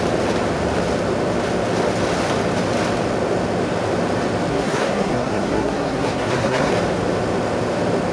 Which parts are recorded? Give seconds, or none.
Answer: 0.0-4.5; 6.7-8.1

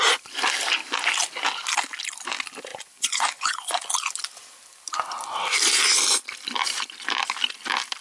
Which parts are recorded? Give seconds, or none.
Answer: 0.0-2.7; 3.8-8.0

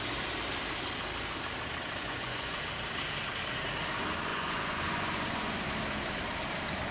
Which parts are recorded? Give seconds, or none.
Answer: 0.0-2.0; 2.6-4.3; 5.6-6.9

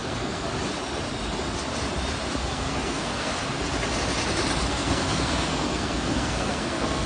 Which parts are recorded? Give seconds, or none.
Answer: 0.5-2.4; 3.3-4.7

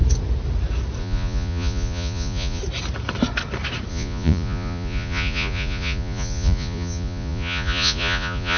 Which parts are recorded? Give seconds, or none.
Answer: 0.0-1.0; 2.6-3.9